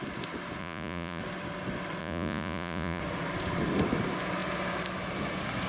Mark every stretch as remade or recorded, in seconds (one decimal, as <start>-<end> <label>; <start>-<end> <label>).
0.0-0.6 recorded; 0.6-1.2 remade; 1.2-2.0 recorded; 2.0-3.0 remade; 3.0-5.7 recorded